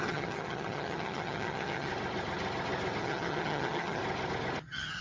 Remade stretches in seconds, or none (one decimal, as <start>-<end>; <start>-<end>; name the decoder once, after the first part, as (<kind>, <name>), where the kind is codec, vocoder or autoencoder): 0.0-1.9 (vocoder, HiFi-GAN); 3.0-4.0; 4.6-5.0